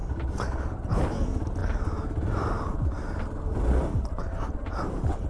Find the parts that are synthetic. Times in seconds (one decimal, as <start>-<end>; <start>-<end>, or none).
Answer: none